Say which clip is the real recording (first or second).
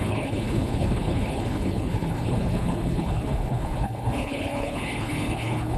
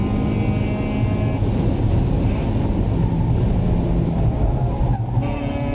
second